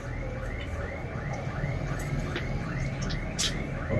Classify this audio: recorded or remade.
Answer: recorded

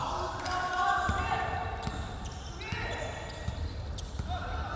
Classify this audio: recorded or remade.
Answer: recorded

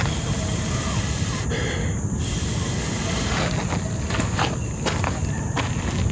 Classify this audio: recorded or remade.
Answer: recorded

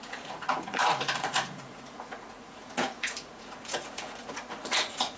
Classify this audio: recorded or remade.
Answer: remade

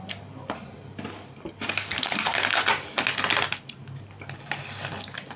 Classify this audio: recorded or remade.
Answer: recorded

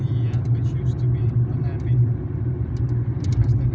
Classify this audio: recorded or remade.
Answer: recorded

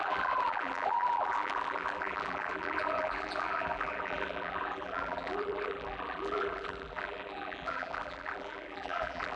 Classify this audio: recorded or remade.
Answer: remade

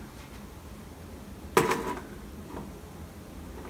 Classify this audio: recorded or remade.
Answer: recorded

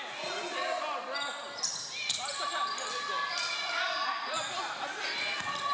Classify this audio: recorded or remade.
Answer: recorded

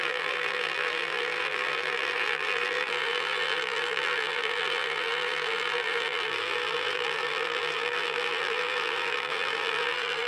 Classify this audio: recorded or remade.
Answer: remade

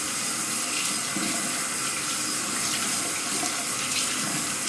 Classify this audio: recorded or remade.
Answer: recorded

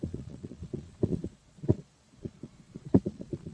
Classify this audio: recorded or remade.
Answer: remade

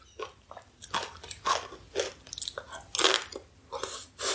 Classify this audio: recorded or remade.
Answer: recorded